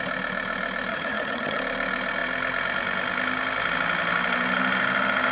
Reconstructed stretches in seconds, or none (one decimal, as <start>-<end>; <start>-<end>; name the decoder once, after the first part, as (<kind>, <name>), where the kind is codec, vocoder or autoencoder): 0.9-1.6 (vocoder, HiFi-GAN)